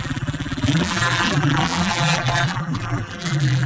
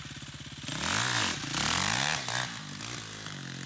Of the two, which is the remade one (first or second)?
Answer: first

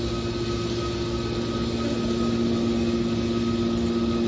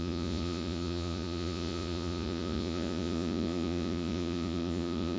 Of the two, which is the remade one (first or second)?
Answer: second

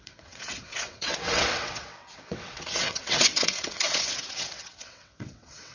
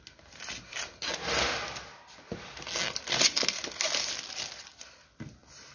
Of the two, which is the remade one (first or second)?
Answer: first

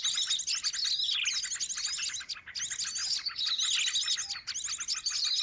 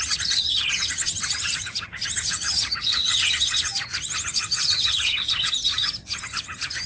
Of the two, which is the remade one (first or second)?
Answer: second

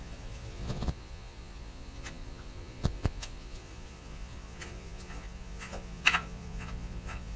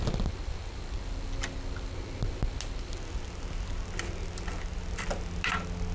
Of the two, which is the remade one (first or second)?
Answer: first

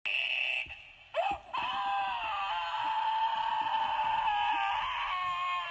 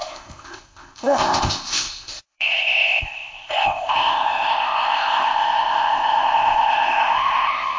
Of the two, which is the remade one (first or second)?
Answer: second